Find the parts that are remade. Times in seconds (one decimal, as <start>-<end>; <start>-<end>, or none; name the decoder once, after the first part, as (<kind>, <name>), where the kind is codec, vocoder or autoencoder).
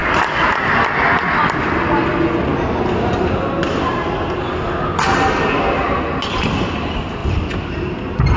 none